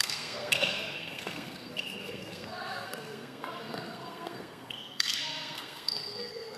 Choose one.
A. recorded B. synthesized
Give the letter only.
B